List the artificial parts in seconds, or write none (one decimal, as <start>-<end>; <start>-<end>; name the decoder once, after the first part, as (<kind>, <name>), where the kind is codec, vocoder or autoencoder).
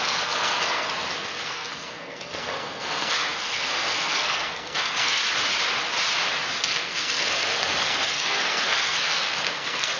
0.0-5.2 (codec, SNAC); 6.5-10.0